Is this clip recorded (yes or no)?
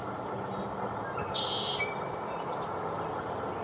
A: yes